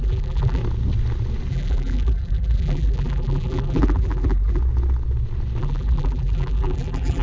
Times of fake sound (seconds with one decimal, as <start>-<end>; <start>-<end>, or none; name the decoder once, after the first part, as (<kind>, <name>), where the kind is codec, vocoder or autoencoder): 0.0-0.6 (vocoder, BigVGAN v2); 1.5-4.6; 5.6-7.2